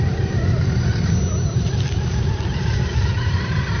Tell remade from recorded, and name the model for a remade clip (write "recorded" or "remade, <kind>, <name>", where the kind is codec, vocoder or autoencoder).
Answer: recorded